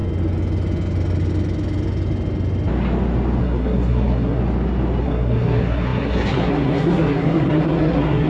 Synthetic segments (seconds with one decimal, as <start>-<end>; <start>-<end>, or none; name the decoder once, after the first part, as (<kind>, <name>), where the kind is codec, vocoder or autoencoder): 3.4-4.4 (codec, SNAC); 5.0-8.3